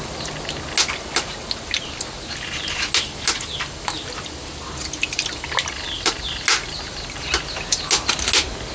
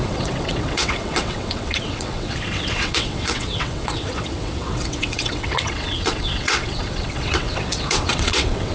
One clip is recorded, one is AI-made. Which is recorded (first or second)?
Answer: first